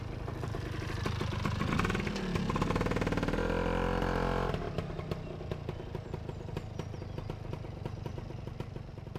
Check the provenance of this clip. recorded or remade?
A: recorded